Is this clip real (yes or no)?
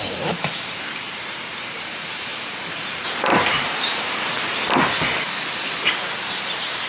no